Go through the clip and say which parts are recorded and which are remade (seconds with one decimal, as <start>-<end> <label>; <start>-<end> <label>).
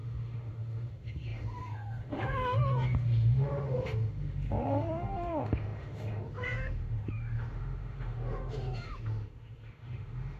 0.0-10.4 remade